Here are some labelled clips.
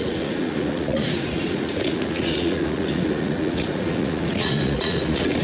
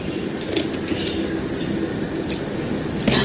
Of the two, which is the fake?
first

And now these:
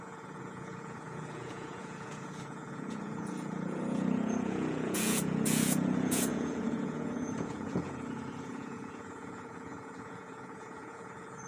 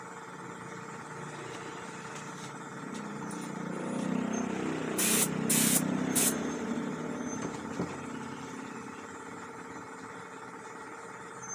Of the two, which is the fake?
first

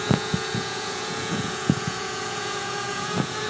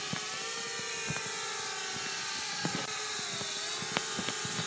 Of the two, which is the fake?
first